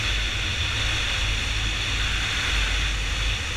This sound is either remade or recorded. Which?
recorded